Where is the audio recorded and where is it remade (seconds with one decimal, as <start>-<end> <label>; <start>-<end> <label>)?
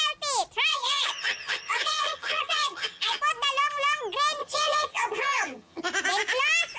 0.0-0.7 recorded; 0.7-3.2 remade; 3.2-4.4 recorded; 4.4-5.8 remade; 5.8-6.8 recorded